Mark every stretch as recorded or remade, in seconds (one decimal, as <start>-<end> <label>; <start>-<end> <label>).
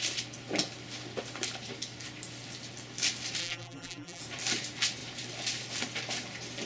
0.0-3.4 recorded; 3.4-4.2 remade; 4.2-6.7 recorded